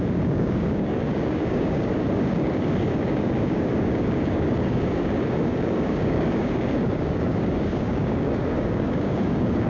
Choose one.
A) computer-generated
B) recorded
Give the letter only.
A